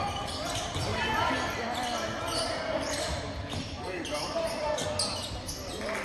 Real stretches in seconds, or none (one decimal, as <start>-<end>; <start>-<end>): 0.0-6.0